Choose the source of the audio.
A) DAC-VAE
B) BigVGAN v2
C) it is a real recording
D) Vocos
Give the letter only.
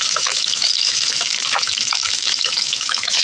A